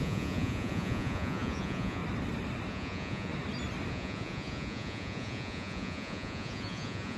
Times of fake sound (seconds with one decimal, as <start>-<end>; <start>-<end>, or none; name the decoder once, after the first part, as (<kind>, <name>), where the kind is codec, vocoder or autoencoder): 0.0-2.0 (vocoder, Vocos); 2.7-3.3; 3.9-7.2